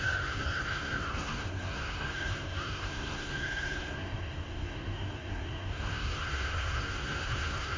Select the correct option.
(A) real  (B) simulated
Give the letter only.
B